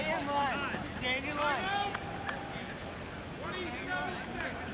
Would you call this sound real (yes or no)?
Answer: yes